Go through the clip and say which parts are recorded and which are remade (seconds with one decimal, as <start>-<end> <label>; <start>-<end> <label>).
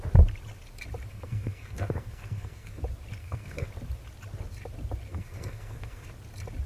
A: 0.0-1.1 recorded; 1.1-2.8 remade; 2.8-3.2 recorded; 3.2-3.7 remade; 3.7-5.1 recorded; 5.1-6.1 remade; 6.1-6.7 recorded